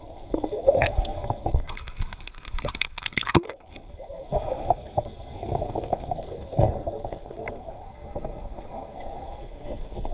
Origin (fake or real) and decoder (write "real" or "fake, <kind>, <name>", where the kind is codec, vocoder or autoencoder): fake, codec, SNAC